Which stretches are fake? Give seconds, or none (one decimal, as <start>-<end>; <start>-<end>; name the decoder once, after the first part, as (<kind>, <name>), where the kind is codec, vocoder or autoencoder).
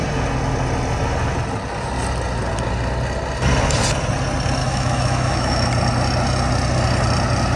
4.6-5.7 (autoencoder, DAC-VAE)